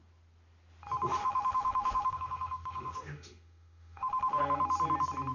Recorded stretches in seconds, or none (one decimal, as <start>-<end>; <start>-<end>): 0.0-1.2; 4.4-5.3